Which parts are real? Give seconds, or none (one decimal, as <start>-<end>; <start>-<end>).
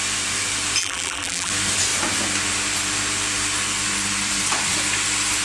0.0-0.8; 1.5-5.4